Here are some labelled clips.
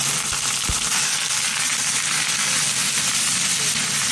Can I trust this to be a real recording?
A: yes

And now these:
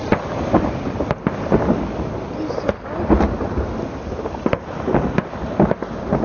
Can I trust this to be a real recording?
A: yes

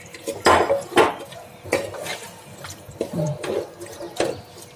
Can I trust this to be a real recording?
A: yes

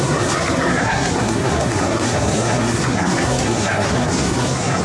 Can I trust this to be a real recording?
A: no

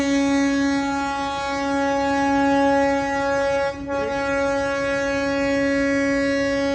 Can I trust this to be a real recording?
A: yes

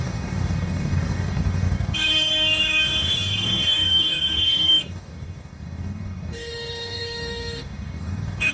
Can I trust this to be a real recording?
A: no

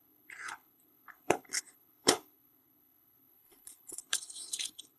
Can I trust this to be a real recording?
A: no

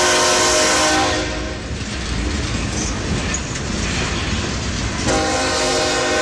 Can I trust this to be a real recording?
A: yes